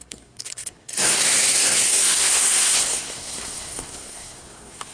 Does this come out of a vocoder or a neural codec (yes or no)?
yes